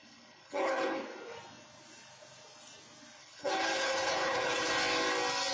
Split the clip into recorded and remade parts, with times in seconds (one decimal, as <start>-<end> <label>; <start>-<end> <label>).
0.0-1.0 remade; 1.0-3.2 recorded; 3.2-4.7 remade; 4.7-5.5 recorded